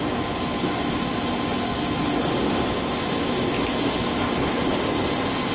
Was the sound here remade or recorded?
recorded